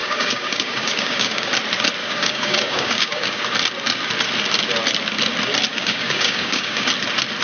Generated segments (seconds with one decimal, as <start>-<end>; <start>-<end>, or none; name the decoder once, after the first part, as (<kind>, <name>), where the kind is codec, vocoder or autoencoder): 0.0-1.5 (codec, DAC); 2.0-3.4; 5.7-6.9

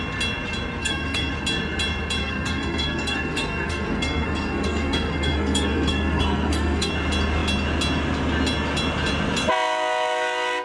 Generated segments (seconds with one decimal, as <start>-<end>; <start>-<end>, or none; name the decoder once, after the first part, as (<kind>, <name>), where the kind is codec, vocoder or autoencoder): 0.8-1.3 (codec, SNAC); 2.2-6.9